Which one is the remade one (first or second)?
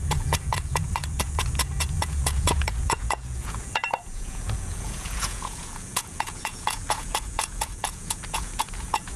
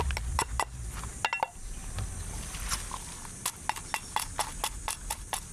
first